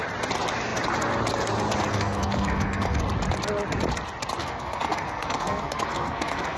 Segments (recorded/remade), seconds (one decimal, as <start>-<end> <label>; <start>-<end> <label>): 0.0-1.9 recorded; 1.9-3.0 remade; 3.0-4.4 recorded; 4.4-6.6 remade